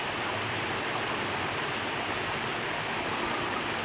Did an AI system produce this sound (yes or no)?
no